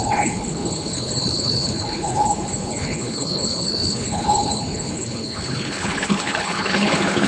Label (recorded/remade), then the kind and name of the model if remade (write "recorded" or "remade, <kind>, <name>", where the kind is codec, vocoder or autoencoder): remade, codec, HILCodec